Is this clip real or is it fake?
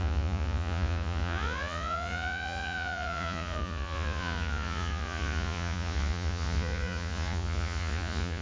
fake